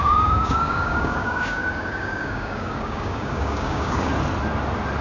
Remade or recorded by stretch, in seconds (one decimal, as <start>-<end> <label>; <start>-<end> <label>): 0.0-4.1 remade; 4.1-5.0 recorded